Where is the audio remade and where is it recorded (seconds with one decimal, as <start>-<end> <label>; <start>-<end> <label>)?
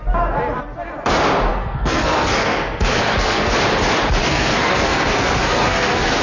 0.0-1.5 recorded; 1.5-3.5 remade; 3.5-4.2 recorded; 4.2-6.2 remade